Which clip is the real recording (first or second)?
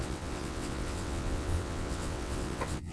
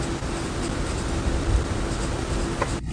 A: second